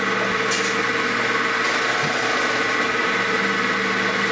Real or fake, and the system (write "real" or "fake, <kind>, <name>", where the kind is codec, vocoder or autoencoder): real